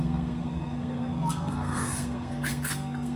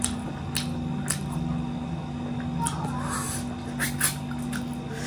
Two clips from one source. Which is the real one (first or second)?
second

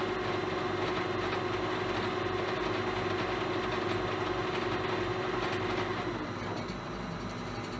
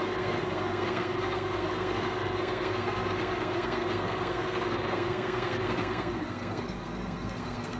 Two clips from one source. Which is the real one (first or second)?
first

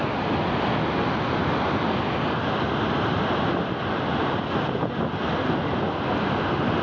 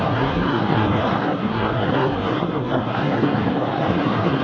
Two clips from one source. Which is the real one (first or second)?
first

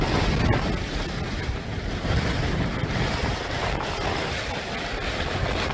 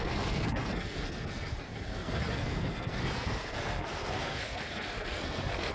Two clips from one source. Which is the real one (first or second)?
first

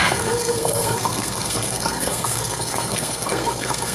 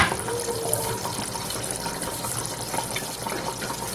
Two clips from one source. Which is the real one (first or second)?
second